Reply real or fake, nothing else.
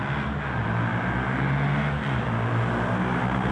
real